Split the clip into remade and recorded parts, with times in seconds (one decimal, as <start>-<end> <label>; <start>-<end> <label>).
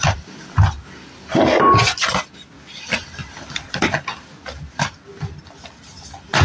0.0-6.4 recorded